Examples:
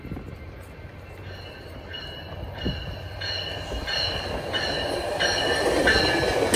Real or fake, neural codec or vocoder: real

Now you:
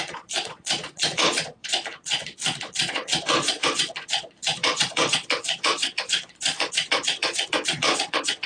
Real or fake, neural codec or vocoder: fake, vocoder, Vocos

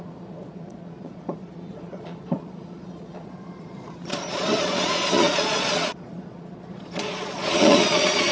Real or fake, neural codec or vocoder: fake, vocoder, Vocos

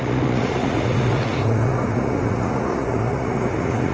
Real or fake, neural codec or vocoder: fake, vocoder, Vocos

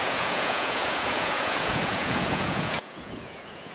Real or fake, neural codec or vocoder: fake, vocoder, Vocos